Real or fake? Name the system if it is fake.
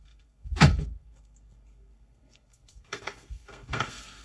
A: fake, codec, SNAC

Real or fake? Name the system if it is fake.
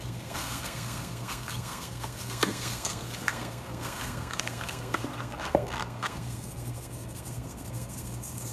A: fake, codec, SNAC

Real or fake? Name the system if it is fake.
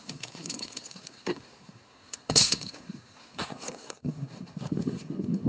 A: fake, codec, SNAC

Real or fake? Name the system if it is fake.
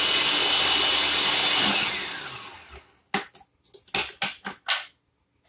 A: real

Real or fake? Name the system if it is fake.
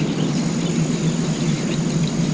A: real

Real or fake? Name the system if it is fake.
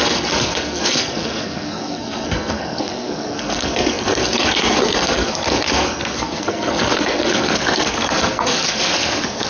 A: fake, codec, SNAC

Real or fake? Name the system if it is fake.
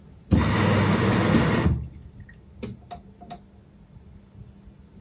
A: real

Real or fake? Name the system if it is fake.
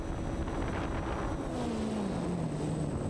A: real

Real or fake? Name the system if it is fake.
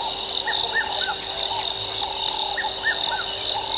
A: real